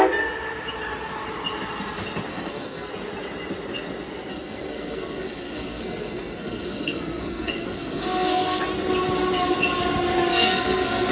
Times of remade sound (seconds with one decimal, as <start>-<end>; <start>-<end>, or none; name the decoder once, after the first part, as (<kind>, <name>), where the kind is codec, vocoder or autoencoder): 2.3-2.9 (codec, SNAC); 4.3-8.6; 10.3-11.1